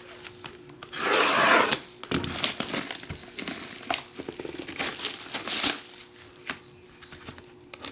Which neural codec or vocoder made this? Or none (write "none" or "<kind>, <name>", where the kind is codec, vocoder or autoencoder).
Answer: none